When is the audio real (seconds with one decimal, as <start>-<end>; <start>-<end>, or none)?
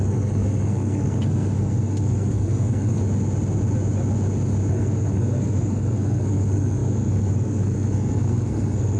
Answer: 3.0-4.7